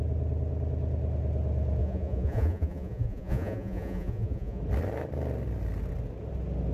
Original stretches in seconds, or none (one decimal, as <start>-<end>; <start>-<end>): 0.0-1.8; 4.6-6.7